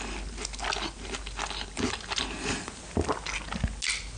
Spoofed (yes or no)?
no